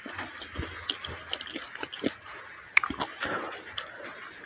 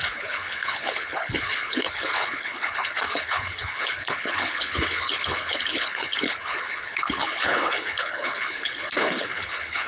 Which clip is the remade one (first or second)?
second